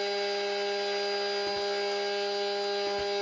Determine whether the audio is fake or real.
real